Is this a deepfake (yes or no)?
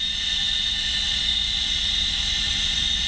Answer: yes